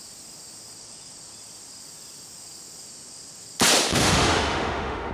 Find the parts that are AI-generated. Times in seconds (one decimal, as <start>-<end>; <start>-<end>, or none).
3.9-5.1